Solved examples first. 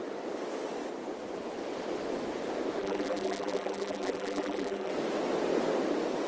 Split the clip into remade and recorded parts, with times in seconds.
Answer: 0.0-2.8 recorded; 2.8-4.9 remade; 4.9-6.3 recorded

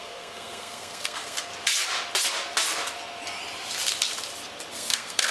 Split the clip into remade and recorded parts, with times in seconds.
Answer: 0.0-1.5 remade; 1.5-4.7 recorded; 4.7-5.3 remade

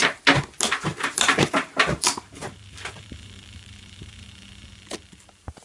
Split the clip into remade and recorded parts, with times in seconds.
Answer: 0.0-0.9 recorded; 0.9-4.3 remade; 4.3-5.6 recorded